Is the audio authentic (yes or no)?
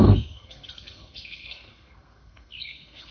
no